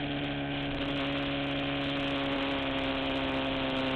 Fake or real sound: real